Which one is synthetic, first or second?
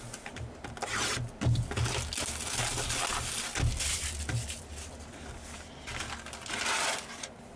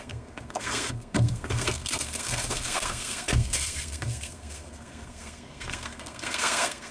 second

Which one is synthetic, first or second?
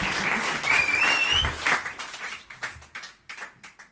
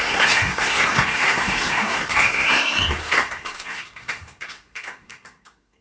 second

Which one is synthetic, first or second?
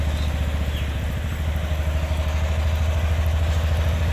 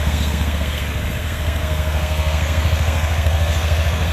second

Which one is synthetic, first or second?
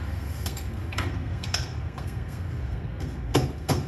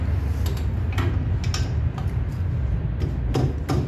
first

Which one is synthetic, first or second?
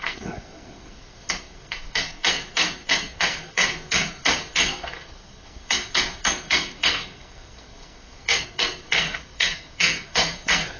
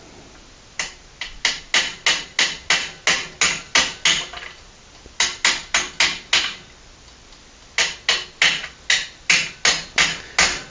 first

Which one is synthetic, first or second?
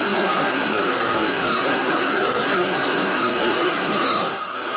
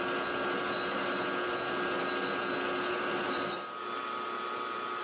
first